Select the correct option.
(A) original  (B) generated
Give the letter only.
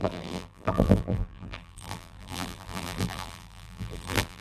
B